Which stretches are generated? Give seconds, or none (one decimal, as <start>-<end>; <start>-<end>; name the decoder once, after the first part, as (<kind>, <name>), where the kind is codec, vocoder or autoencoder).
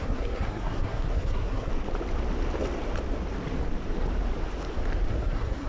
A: 0.0-1.7 (codec, SNAC); 5.1-5.7